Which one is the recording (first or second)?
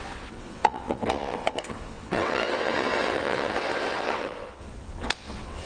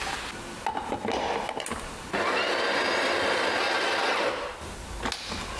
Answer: second